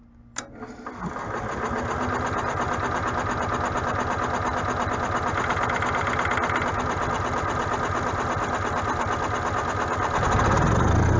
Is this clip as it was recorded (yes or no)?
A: yes